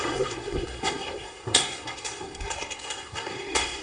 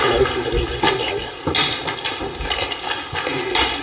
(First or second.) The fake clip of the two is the first